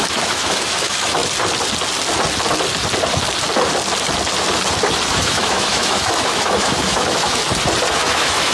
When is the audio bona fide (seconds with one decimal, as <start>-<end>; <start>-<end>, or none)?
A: 1.2-5.1; 7.4-7.9